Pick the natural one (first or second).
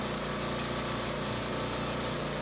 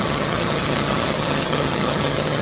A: first